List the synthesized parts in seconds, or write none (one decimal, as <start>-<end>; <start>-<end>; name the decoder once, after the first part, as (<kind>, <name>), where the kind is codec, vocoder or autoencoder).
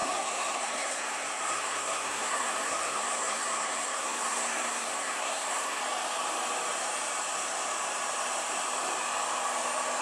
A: 0.0-5.8 (codec, SNAC)